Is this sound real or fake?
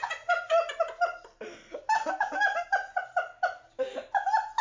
real